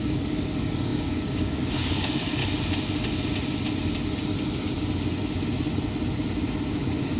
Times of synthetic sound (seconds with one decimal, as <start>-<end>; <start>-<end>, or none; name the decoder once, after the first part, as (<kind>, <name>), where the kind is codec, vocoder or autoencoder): 0.0-2.4 (codec, DAC); 6.7-7.2